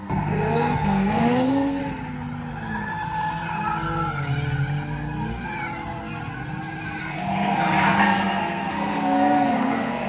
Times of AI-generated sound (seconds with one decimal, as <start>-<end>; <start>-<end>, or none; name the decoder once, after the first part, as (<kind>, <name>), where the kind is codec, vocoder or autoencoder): 0.0-1.8 (codec, SNAC); 7.0-10.1